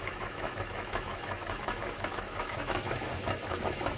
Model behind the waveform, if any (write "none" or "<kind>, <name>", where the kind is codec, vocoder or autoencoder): autoencoder, DAC-VAE